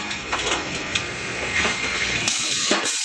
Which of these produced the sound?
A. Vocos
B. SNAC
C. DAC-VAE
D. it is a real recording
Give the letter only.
B